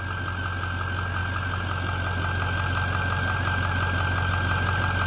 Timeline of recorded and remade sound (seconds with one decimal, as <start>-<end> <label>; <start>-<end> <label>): 0.0-5.1 recorded